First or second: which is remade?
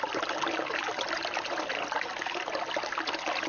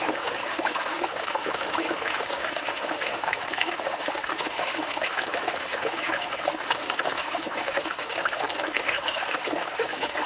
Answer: second